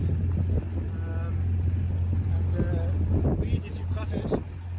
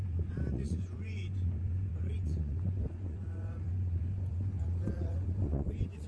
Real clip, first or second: first